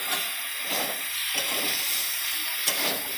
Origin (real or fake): fake